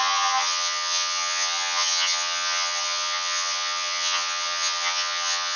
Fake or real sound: fake